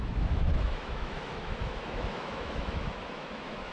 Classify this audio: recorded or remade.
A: remade